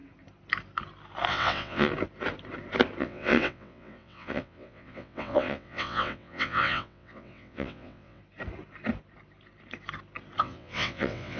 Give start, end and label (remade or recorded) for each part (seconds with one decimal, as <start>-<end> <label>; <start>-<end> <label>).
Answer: 0.0-1.3 recorded; 1.3-1.9 remade; 1.9-3.0 recorded; 3.0-8.2 remade; 8.2-10.4 recorded; 10.4-11.4 remade